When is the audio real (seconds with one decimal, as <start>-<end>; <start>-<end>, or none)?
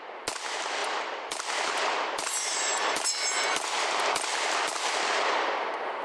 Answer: 0.0-0.8; 3.3-4.3; 5.0-6.0